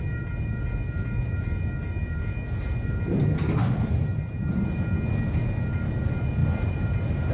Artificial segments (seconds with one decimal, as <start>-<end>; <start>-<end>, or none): 3.6-4.5